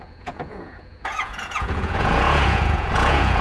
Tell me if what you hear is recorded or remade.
remade